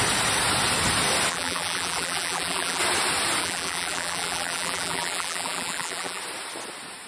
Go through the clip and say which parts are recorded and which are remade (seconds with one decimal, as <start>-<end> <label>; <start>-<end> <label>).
0.0-1.3 recorded; 1.3-2.8 remade; 2.8-3.4 recorded; 3.4-6.2 remade; 6.2-7.1 recorded